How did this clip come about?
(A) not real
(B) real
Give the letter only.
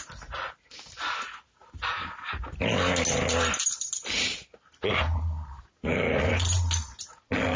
B